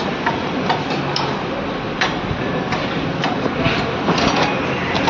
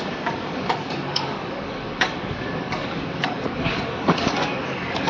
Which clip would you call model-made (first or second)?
second